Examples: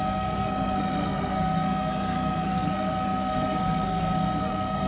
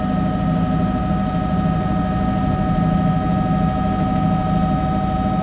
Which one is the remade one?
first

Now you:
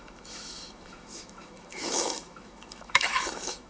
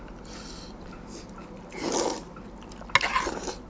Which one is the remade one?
first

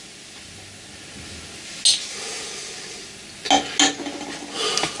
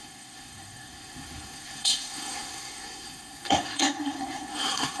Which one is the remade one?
second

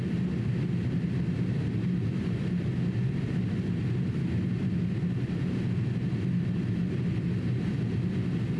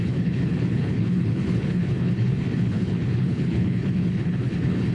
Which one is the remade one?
second